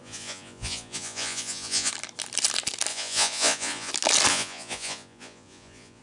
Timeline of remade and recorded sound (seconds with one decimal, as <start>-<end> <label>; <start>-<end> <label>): 0.0-1.9 remade; 1.9-2.9 recorded; 2.9-3.9 remade; 3.9-4.3 recorded; 4.3-6.0 remade